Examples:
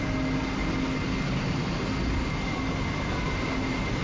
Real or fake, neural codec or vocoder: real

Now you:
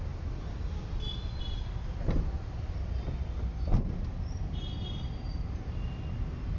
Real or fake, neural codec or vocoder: real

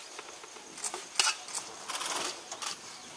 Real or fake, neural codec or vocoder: real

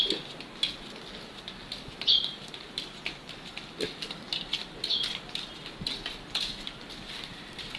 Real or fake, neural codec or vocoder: real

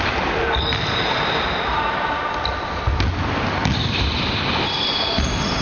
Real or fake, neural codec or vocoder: real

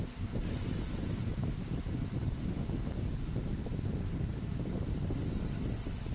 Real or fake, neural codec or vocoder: real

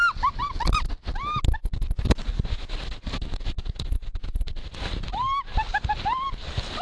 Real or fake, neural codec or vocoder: real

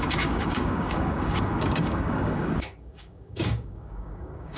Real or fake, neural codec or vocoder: fake, codec, DAC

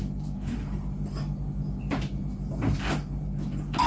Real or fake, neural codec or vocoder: real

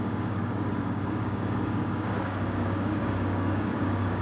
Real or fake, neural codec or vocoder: fake, codec, DAC